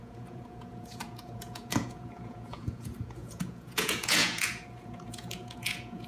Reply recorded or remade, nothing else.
remade